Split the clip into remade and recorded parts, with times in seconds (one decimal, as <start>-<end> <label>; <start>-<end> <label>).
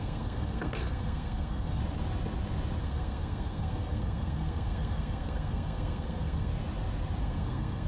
0.0-1.8 remade; 1.8-2.8 recorded; 2.8-6.5 remade; 6.5-7.2 recorded; 7.2-7.9 remade